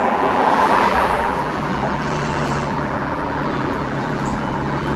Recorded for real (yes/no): no